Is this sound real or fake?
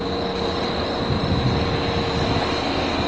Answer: real